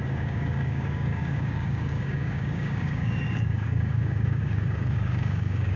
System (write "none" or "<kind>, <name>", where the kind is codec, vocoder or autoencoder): codec, DAC